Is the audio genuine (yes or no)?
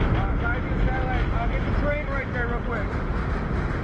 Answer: yes